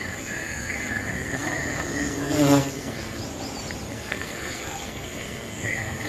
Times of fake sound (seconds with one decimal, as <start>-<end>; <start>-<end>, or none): 0.0-3.2; 3.9-6.1